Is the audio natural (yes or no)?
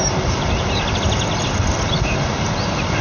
yes